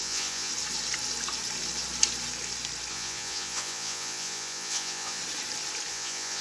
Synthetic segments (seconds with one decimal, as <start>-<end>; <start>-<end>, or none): 0.0-0.5; 2.9-5.2; 5.9-6.4